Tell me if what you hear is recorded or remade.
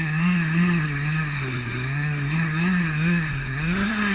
remade